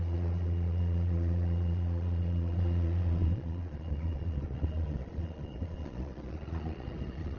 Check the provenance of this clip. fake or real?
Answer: fake